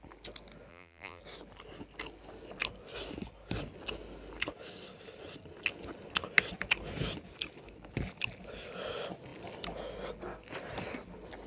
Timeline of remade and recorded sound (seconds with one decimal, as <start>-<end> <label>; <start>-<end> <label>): 0.0-0.7 recorded; 0.7-1.2 remade; 1.2-11.5 recorded